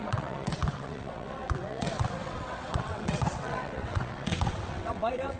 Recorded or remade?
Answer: remade